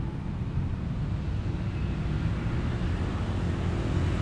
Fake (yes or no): no